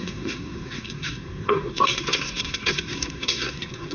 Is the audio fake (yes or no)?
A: yes